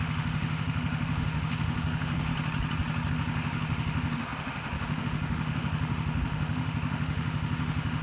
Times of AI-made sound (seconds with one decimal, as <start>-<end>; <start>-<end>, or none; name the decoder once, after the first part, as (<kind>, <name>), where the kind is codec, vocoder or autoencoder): 0.0-2.3 (autoencoder, DAC-VAE); 3.1-8.0